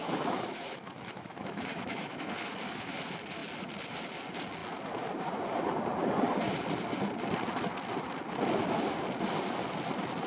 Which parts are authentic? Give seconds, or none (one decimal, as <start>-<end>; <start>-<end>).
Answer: 3.0-10.3